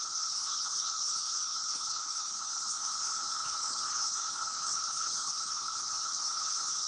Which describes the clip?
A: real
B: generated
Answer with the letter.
B